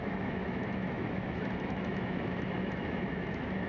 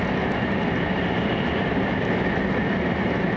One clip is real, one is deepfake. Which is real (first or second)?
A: second